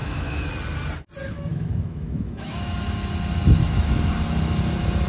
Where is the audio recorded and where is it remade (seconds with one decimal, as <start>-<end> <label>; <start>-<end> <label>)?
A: 0.0-0.5 remade; 0.5-1.5 recorded; 1.5-2.8 remade; 2.8-3.6 recorded; 3.6-4.1 remade; 4.1-5.1 recorded